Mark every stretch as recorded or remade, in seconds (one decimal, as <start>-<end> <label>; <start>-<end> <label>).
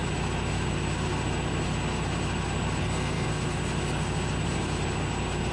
0.0-2.8 recorded; 2.8-3.3 remade; 3.3-5.5 recorded